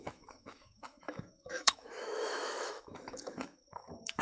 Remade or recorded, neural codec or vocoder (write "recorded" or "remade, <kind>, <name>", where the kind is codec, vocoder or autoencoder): remade, autoencoder, DAC-VAE